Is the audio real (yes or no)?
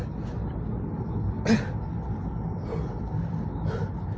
yes